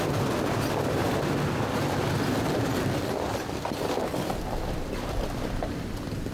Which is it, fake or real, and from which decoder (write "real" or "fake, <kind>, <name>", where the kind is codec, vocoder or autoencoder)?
real